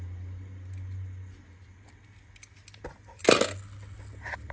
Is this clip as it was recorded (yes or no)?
yes